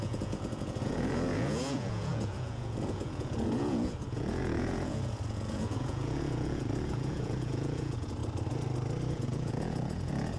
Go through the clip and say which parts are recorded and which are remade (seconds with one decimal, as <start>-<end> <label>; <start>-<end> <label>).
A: 0.0-8.2 remade; 8.2-9.1 recorded; 9.1-10.4 remade